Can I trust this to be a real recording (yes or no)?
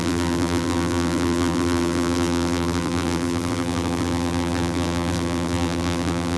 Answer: no